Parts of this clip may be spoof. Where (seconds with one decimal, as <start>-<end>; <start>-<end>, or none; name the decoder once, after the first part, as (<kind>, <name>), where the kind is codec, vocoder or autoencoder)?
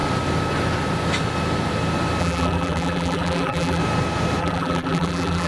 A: 2.2-3.8 (vocoder, BigVGAN v2); 4.4-5.5